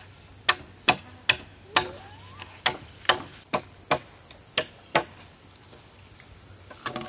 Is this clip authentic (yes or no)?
yes